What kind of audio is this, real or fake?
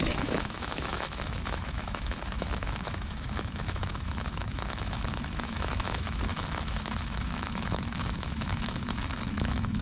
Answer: fake